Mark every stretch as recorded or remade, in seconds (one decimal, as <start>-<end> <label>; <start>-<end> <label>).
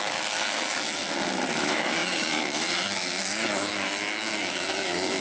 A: 0.0-1.0 remade; 1.0-1.5 recorded; 1.5-5.2 remade